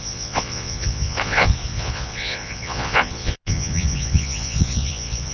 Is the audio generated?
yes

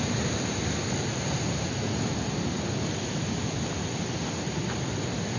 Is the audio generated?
no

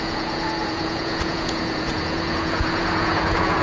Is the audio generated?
yes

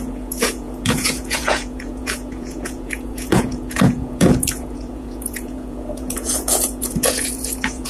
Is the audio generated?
yes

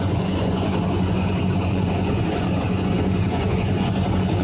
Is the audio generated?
yes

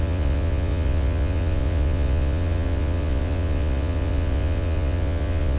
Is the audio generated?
yes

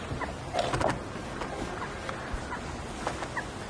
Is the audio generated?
no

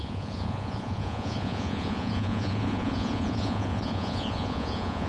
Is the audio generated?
yes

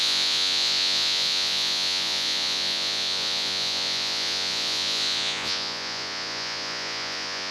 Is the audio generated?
yes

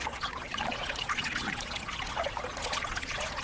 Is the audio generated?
yes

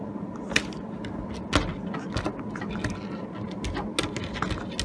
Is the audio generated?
no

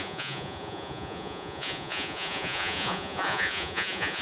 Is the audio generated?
yes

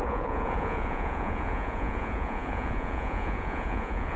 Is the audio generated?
yes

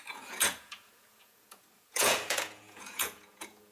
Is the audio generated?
yes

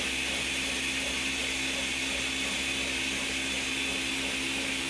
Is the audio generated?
no